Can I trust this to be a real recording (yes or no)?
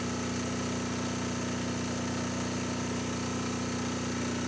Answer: yes